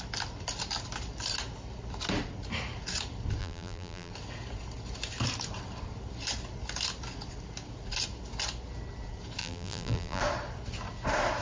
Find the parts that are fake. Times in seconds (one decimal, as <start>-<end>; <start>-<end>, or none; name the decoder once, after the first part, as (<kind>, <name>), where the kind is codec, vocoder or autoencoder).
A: 3.4-4.1 (vocoder, BigVGAN v2); 9.4-10.2